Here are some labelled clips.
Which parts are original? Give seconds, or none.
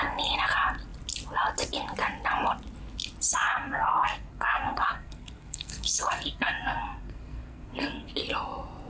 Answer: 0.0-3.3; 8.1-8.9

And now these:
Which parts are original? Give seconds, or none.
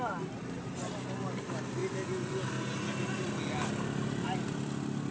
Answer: 0.0-5.1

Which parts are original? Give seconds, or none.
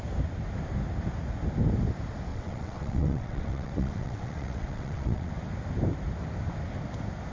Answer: 0.0-2.3; 5.3-7.3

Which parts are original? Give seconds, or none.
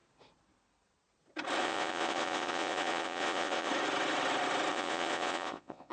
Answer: 0.0-1.6; 3.7-4.7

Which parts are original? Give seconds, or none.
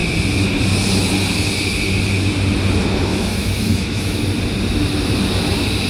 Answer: 0.0-3.1; 4.2-5.9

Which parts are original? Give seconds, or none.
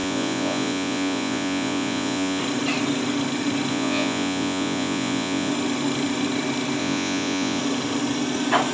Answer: 2.4-3.7; 5.5-6.8; 7.6-8.7